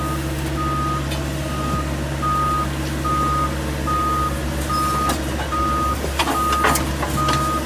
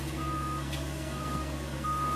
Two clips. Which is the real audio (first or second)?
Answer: first